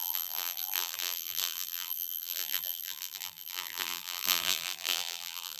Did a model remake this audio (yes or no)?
yes